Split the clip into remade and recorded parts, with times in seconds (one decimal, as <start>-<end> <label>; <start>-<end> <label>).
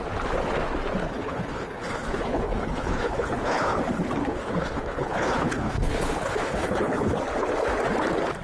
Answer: 0.0-1.0 recorded; 1.0-3.8 remade; 3.8-4.2 recorded; 4.2-7.2 remade; 7.2-8.4 recorded